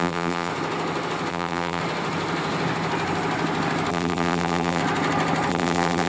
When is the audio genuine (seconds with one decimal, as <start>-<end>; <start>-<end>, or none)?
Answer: 0.5-1.3; 1.8-3.9; 4.8-5.5